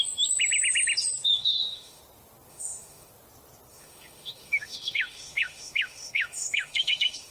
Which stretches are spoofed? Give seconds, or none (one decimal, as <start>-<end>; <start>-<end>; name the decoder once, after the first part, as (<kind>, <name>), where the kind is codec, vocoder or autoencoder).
1.3-2.0 (autoencoder, DAC-VAE); 2.5-3.1; 3.7-7.3